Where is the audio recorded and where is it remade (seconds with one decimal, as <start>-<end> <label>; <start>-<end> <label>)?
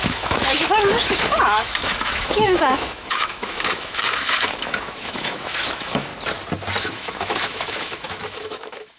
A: 0.0-6.1 remade; 6.1-6.8 recorded; 6.8-9.0 remade